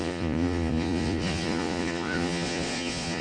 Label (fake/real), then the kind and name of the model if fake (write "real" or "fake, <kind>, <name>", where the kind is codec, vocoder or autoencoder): fake, vocoder, Vocos